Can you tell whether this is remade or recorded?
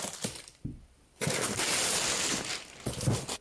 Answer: recorded